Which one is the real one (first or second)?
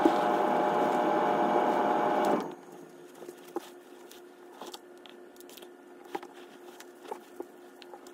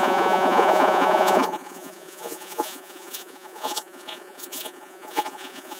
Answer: first